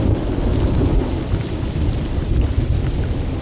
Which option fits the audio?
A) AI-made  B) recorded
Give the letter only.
B